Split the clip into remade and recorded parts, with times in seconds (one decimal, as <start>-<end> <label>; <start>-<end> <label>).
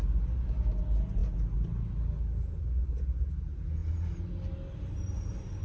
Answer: 0.0-5.6 recorded